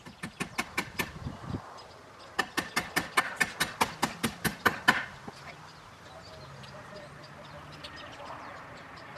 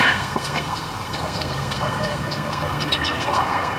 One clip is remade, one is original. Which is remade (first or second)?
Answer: second